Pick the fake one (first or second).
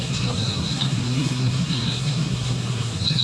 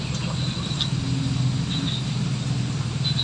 first